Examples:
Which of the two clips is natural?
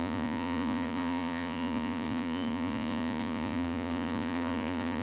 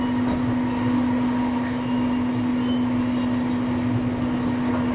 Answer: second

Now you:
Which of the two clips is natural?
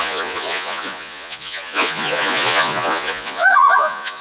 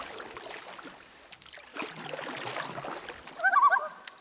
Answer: second